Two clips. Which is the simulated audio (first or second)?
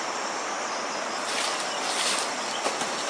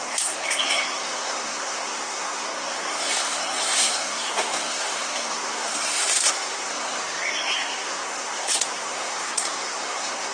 second